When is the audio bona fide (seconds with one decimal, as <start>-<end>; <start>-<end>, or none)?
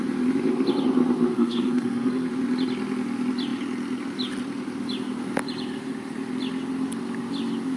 0.0-1.3; 2.3-7.8